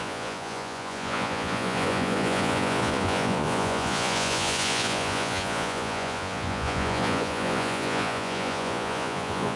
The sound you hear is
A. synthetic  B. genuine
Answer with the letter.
A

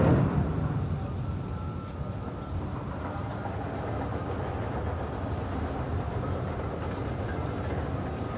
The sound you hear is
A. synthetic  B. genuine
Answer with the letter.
B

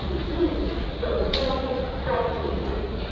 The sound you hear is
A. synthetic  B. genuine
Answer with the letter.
A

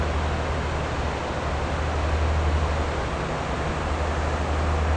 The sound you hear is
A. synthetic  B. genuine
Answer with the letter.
B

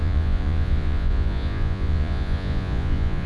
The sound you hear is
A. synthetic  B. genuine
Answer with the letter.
A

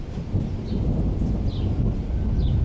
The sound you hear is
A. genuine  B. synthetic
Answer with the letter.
A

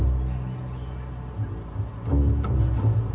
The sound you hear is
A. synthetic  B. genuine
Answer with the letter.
B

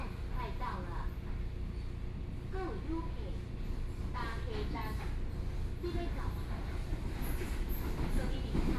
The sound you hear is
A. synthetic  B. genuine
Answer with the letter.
B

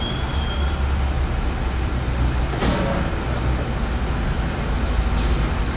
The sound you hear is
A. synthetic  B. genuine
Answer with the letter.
B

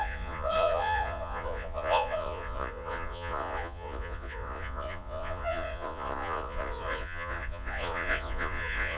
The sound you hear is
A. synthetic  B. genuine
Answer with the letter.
A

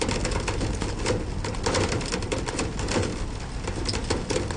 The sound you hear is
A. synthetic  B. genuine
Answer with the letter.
B